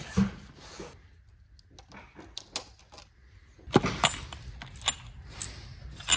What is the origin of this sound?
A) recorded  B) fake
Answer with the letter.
A